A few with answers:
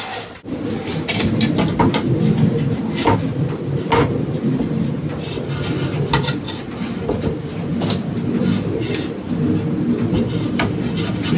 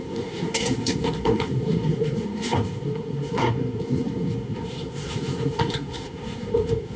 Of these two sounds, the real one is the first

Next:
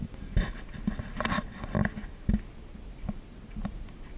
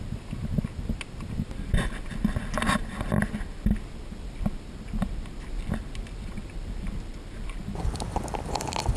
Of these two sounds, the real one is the first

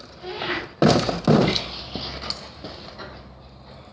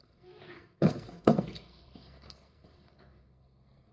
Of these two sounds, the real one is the first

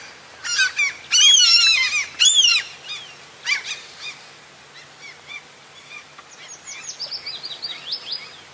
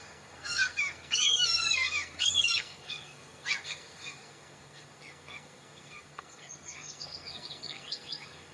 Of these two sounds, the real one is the first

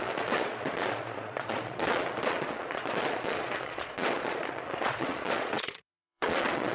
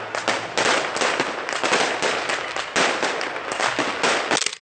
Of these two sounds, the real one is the second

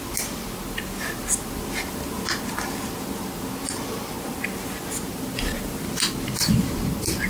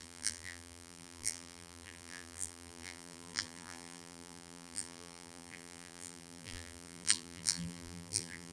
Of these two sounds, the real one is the first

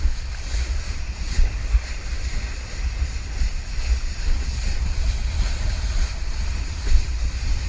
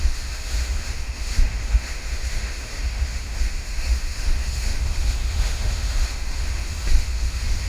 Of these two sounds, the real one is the first